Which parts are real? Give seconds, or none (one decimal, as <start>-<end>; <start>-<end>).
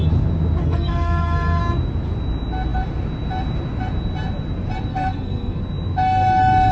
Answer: 0.0-0.6; 1.6-4.9; 5.6-6.7